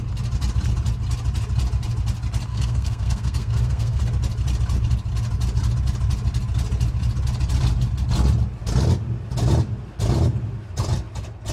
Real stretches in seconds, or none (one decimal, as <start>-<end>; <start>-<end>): 0.0-2.5; 4.0-11.5